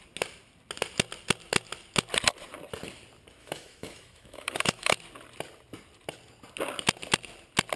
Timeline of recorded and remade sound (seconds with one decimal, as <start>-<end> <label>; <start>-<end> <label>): 0.0-3.4 recorded; 3.4-5.0 remade; 5.0-7.8 recorded